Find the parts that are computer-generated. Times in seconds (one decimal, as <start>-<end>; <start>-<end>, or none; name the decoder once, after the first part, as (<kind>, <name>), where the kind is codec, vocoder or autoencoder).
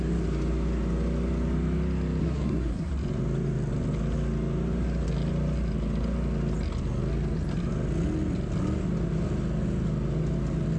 2.2-2.9 (codec, SNAC)